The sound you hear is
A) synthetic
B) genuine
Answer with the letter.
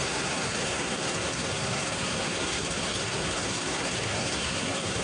A